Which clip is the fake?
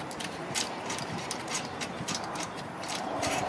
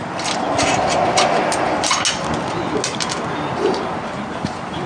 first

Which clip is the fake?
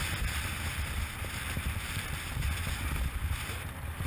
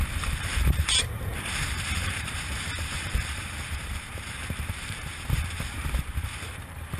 second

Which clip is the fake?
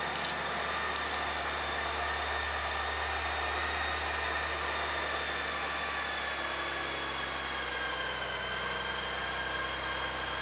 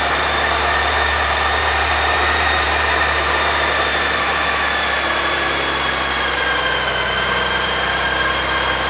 second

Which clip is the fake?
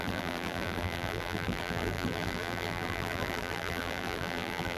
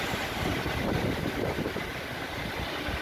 first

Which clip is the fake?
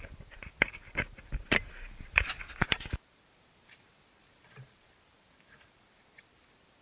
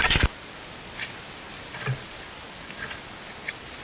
first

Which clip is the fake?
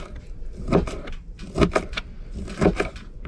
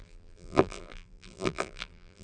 second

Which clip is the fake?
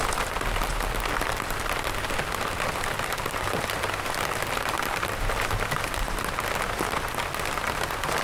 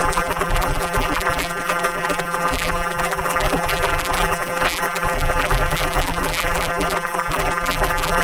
second